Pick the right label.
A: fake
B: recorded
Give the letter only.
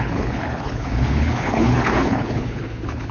A